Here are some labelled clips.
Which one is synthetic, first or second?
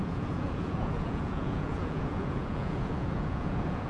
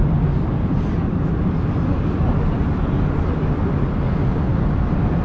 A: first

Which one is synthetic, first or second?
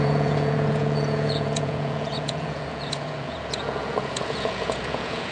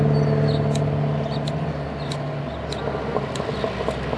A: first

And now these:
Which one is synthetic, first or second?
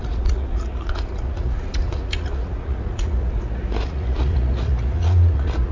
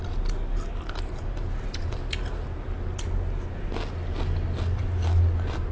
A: first